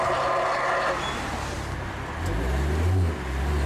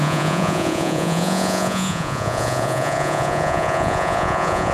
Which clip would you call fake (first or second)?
second